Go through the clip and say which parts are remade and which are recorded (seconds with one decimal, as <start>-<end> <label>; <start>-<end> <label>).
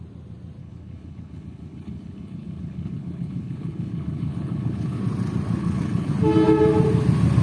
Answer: 0.0-0.6 recorded; 0.6-5.0 remade; 5.0-5.6 recorded; 5.6-6.1 remade; 6.1-7.4 recorded